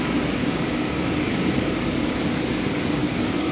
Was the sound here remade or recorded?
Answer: remade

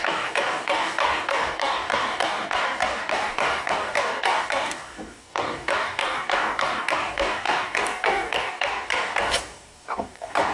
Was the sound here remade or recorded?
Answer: remade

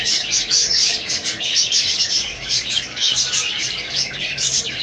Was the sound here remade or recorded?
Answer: remade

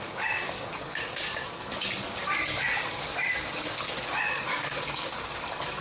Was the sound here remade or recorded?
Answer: remade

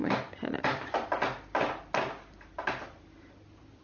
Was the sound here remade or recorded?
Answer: recorded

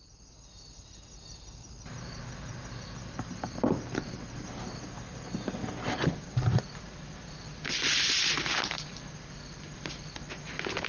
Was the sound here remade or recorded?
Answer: recorded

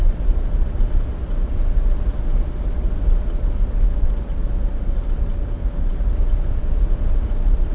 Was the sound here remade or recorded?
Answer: recorded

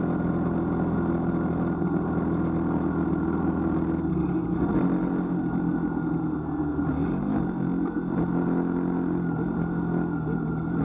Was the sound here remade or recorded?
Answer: recorded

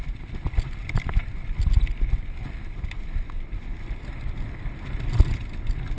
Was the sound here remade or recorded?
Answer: recorded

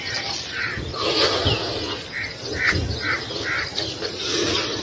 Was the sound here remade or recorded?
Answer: recorded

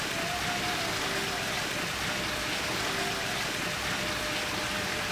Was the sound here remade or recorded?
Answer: recorded